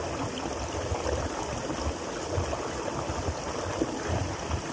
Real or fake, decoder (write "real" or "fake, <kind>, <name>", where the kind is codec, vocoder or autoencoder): real